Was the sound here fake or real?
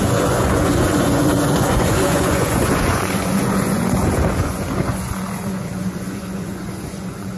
fake